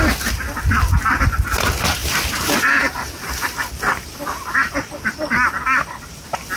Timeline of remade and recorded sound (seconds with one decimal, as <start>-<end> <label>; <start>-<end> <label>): 0.0-6.6 recorded